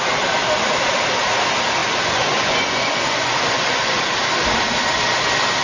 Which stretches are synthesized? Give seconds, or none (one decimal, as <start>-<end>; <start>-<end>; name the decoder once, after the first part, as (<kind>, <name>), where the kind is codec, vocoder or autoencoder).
1.8-4.0 (vocoder, Vocos)